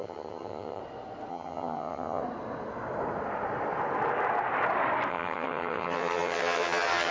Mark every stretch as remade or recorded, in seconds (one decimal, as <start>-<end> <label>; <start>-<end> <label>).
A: 0.0-0.8 remade; 0.8-1.3 recorded; 1.3-2.2 remade; 2.2-5.1 recorded; 5.1-7.1 remade